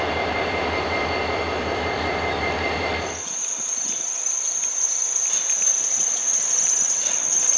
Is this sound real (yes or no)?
no